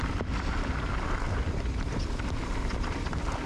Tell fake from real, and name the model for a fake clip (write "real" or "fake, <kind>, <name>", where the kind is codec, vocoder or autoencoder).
fake, vocoder, BigVGAN v2